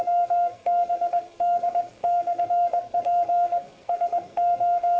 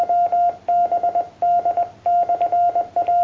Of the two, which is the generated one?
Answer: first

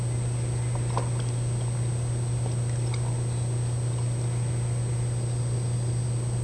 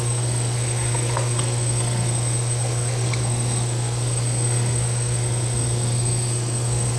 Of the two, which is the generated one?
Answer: second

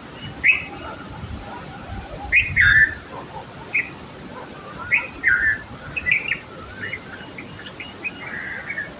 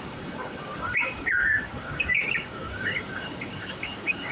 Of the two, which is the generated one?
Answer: second